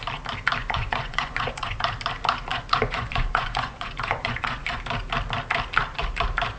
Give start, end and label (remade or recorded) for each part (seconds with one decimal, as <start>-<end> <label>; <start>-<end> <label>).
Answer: 0.0-0.6 recorded; 0.6-1.8 remade; 1.8-2.5 recorded; 2.5-4.8 remade; 4.8-6.6 recorded

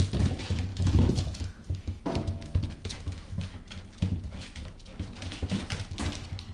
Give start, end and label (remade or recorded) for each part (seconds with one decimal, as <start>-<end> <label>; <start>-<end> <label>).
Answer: 0.0-0.7 recorded; 0.7-3.6 remade; 3.6-6.5 recorded

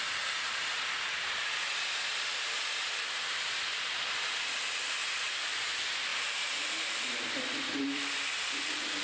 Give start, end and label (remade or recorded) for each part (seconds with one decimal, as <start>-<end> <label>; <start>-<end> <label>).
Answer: 0.0-9.0 remade